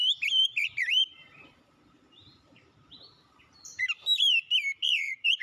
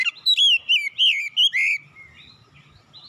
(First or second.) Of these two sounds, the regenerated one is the first